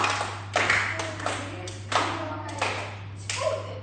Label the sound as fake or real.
real